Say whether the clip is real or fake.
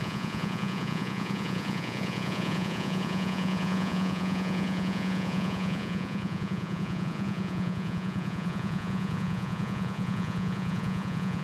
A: fake